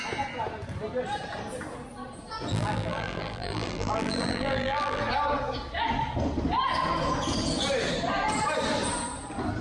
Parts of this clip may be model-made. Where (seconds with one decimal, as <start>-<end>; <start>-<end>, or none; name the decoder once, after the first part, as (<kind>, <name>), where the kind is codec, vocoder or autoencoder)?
2.5-5.0 (vocoder, BigVGAN v2)